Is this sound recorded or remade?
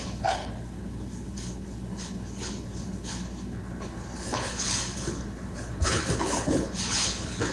remade